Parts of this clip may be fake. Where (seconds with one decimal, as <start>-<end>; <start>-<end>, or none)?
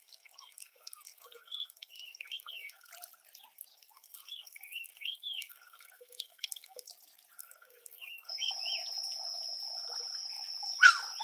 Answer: 0.0-2.9; 3.7-6.9; 7.4-8.5